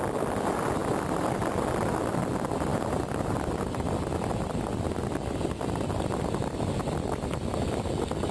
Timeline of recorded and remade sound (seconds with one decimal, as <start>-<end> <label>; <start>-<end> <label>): 0.0-8.3 recorded